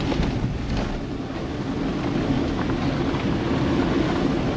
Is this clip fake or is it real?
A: real